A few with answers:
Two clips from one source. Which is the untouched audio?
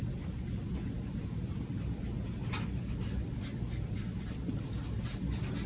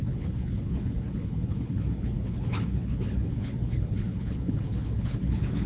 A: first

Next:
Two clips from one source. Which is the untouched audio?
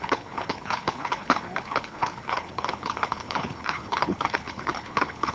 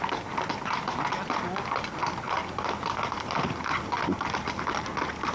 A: second